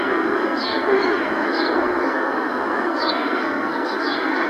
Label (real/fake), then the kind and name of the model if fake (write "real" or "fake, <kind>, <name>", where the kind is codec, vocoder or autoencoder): fake, codec, SNAC